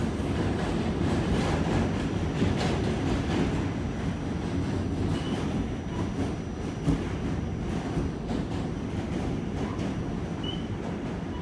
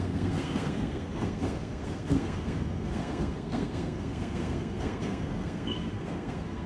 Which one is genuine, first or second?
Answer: first